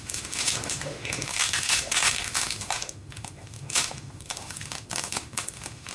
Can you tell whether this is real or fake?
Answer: fake